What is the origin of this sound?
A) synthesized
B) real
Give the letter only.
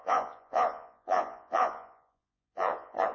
A